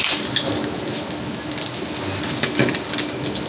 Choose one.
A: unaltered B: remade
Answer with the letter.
A